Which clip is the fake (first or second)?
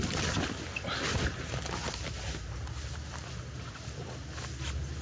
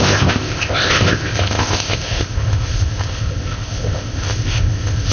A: second